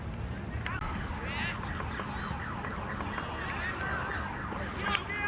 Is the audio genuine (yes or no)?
yes